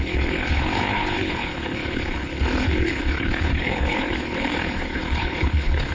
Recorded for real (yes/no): no